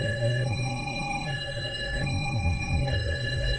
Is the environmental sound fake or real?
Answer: fake